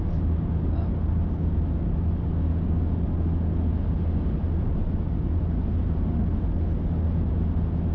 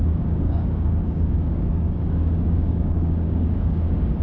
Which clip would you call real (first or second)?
first